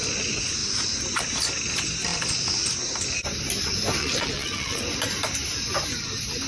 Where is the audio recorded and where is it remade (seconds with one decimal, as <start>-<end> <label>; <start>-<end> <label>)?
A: 0.0-4.0 recorded; 4.0-4.8 remade; 4.8-6.5 recorded